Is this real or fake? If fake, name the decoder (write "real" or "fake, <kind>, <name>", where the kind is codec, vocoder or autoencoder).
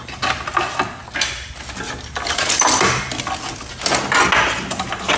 real